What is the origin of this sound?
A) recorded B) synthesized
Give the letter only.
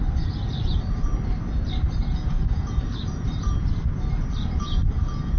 B